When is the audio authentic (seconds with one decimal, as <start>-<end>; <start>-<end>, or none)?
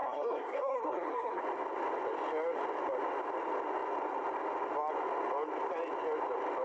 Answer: 1.4-6.6